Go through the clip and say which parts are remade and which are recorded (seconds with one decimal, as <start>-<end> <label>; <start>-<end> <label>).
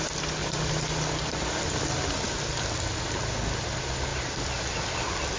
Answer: 0.0-5.4 recorded